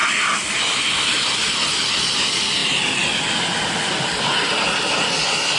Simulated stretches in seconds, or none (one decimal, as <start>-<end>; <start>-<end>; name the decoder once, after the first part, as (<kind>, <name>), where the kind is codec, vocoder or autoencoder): none